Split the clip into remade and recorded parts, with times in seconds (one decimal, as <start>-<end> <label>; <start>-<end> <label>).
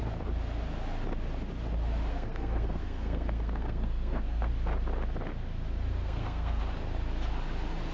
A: 0.0-2.1 recorded; 2.1-4.5 remade; 4.5-5.9 recorded; 5.9-6.6 remade; 6.6-7.9 recorded